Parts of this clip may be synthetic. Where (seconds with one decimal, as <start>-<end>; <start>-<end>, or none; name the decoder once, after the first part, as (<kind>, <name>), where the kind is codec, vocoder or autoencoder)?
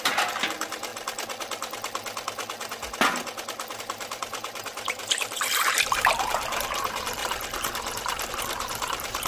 0.0-0.9 (vocoder, BigVGAN v2); 3.8-7.2; 8.3-9.3